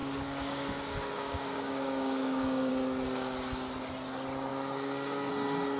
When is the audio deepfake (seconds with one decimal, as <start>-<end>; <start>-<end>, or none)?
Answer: 0.0-2.7; 4.5-5.3